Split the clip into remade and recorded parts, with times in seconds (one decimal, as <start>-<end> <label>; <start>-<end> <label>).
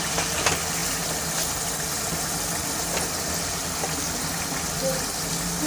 0.0-5.7 recorded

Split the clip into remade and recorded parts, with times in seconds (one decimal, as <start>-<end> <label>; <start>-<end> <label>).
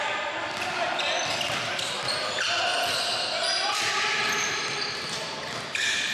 0.0-6.1 recorded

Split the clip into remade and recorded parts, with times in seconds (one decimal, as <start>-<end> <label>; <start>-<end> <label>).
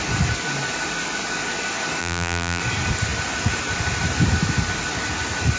0.0-2.0 recorded; 2.0-2.6 remade; 2.6-5.6 recorded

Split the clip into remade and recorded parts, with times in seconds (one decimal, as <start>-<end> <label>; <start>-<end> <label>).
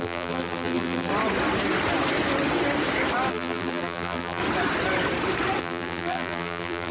0.0-1.1 remade; 1.1-3.3 recorded; 3.3-4.4 remade; 4.4-5.6 recorded; 5.6-6.9 remade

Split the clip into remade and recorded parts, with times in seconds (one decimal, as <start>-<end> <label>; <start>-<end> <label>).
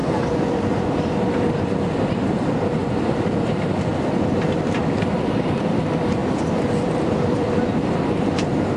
0.0-1.7 remade; 1.7-2.8 recorded; 2.8-3.9 remade; 3.9-4.8 recorded; 4.8-5.8 remade; 5.8-6.2 recorded; 6.2-7.6 remade; 7.6-8.8 recorded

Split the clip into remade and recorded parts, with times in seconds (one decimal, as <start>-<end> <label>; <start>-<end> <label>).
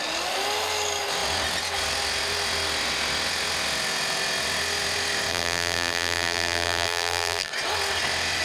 0.0-5.3 recorded; 5.3-7.5 remade; 7.5-8.4 recorded